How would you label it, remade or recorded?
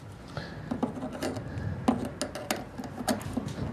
recorded